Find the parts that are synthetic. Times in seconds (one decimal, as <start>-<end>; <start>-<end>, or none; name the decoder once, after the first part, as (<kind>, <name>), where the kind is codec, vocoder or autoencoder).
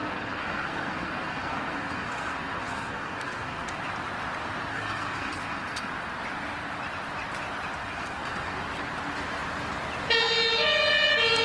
0.0-3.8 (codec, SNAC); 4.7-5.9; 7.8-8.6